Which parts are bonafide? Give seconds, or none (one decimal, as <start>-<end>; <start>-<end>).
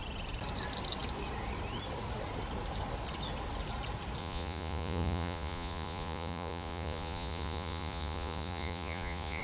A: 0.0-4.2